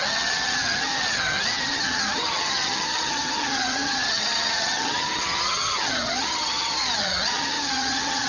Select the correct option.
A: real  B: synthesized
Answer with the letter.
B